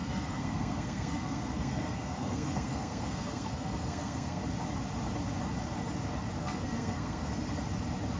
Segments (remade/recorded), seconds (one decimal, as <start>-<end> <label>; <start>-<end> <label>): 0.0-4.4 remade; 4.4-6.4 recorded; 6.4-7.3 remade; 7.3-8.2 recorded

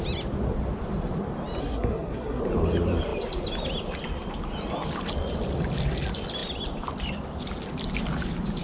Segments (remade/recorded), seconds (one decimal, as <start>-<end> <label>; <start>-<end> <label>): 0.0-1.6 recorded; 1.6-2.4 remade; 2.4-8.6 recorded